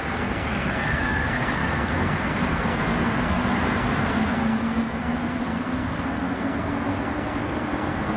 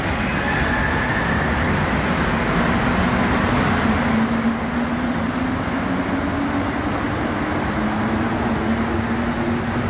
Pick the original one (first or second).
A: second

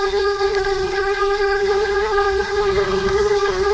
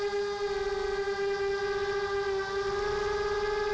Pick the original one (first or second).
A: second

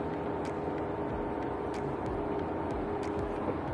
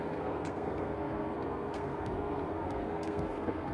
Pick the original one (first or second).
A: first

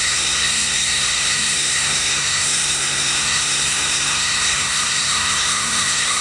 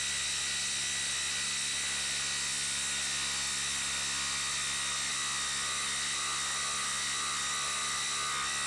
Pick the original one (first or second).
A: second